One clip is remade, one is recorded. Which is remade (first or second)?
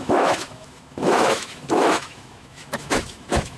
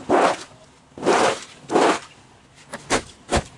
first